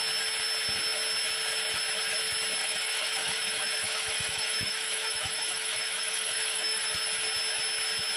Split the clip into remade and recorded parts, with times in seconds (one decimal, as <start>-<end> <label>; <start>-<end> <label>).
0.0-2.6 recorded; 2.6-6.8 remade; 6.8-8.2 recorded